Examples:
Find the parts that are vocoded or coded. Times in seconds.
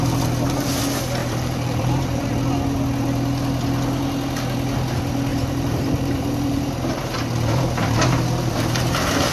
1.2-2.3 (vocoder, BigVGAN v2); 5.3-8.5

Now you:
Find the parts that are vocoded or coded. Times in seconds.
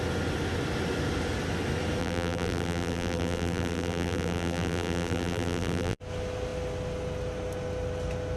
2.0-6.0 (vocoder, BigVGAN v2)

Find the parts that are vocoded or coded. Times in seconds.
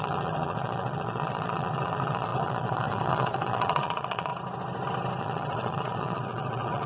0.0-4.3 (vocoder, Vocos); 5.2-6.9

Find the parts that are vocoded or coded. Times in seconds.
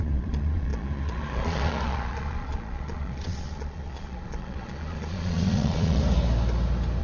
0.0-6.0 (vocoder, Vocos)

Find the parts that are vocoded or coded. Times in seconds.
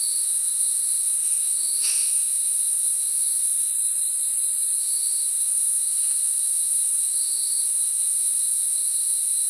0.0-3.7 (autoencoder, DAC-VAE); 4.8-9.5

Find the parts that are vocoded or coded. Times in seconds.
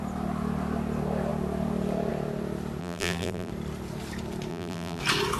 2.8-3.5 (vocoder, BigVGAN v2); 4.5-5.0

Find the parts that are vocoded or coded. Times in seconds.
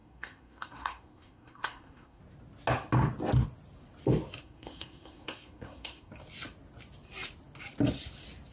0.0-2.2 (codec, SNAC); 4.4-6.1